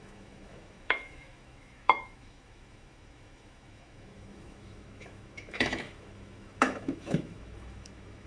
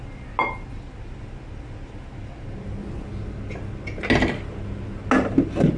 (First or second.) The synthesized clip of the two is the first